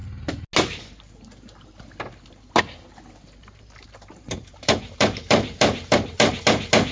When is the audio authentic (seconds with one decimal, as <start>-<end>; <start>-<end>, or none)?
0.0-3.4; 6.4-6.9